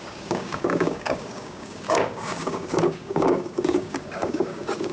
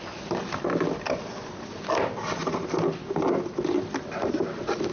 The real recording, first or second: second